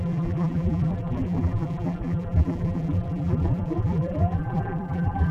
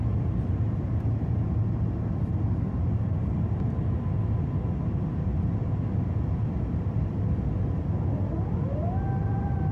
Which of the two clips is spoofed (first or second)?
first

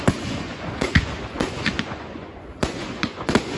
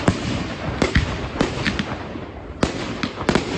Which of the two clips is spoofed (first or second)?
first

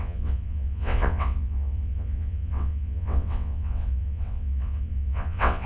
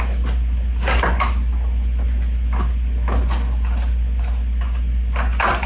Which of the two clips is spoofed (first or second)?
first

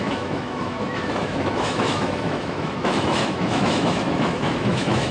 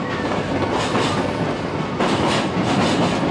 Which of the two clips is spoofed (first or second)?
first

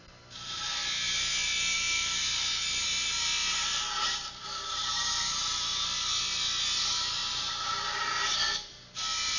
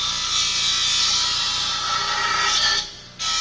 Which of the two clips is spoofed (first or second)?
first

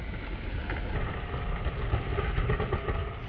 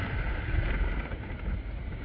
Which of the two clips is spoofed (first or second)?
second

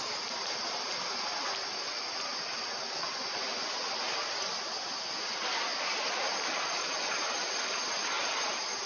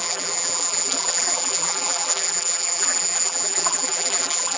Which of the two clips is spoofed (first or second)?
second